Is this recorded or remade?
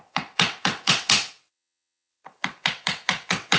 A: remade